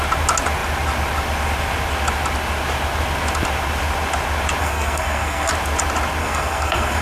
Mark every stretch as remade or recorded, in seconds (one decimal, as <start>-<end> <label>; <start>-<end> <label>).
0.0-4.6 recorded; 4.6-5.5 remade; 5.5-6.2 recorded; 6.2-7.0 remade